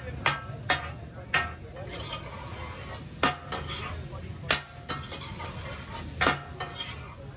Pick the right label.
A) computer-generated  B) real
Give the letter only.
B